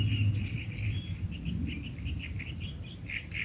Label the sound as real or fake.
real